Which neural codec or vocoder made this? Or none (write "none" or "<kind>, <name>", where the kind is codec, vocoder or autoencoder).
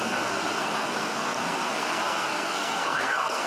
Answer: codec, SNAC